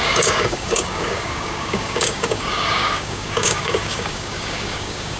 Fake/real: fake